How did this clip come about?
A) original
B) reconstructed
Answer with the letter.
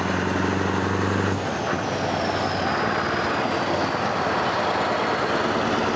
A